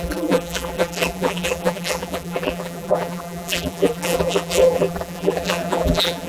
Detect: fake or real fake